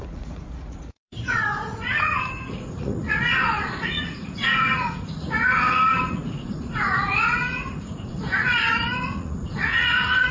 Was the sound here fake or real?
fake